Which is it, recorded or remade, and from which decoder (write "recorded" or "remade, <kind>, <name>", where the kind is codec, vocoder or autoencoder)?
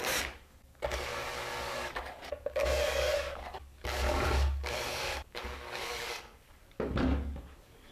remade, codec, DAC